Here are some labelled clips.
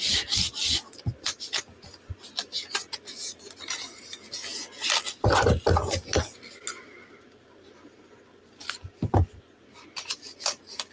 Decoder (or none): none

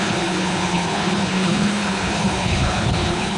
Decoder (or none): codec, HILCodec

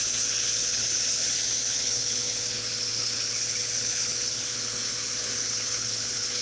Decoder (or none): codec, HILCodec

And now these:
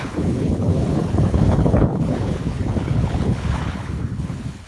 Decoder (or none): codec, HILCodec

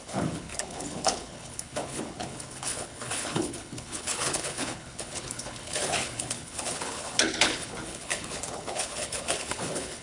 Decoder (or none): codec, HILCodec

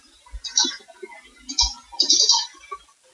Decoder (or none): none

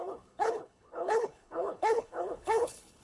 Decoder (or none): codec, HILCodec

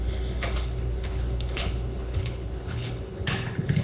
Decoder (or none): codec, HILCodec